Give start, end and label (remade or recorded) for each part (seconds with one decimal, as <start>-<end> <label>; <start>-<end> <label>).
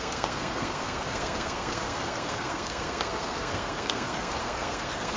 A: 0.0-5.2 remade